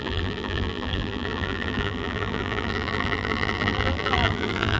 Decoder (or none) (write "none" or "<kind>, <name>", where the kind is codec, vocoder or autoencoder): vocoder, BigVGAN v2